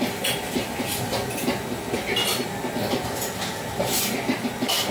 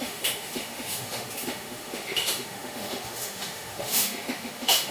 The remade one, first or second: second